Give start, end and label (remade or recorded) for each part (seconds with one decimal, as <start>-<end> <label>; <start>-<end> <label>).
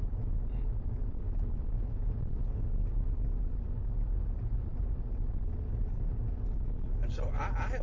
0.0-7.8 recorded